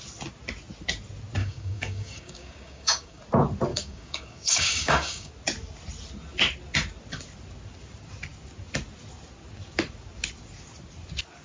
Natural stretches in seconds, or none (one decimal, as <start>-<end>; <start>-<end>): 0.0-1.4; 3.2-3.7; 5.3-11.4